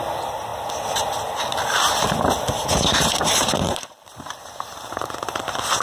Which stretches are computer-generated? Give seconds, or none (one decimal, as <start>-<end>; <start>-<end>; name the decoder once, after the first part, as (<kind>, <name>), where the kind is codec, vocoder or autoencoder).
0.0-0.5 (vocoder, BigVGAN v2); 2.9-5.8